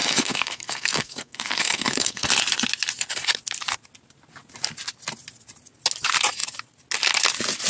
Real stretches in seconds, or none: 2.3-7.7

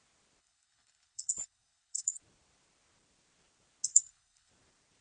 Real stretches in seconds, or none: 0.0-0.4; 2.2-3.9; 4.5-5.0

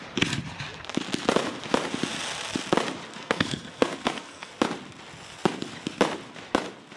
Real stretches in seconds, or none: 0.0-3.1; 4.5-7.0

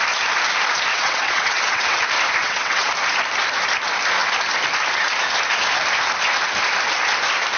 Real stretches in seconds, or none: 0.0-0.9; 2.0-2.4; 2.9-7.6

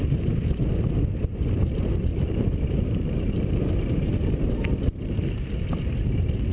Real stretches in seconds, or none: 0.0-1.6; 5.5-6.5

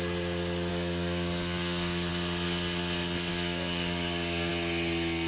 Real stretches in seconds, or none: 0.0-0.7; 2.1-3.3; 4.5-5.3

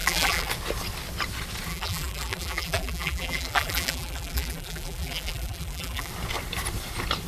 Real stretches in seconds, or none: 0.5-1.7; 6.1-7.3